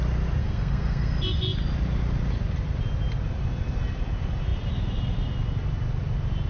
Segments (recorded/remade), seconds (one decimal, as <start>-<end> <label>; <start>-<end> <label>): 0.0-0.4 recorded; 0.4-1.1 remade; 1.1-6.5 recorded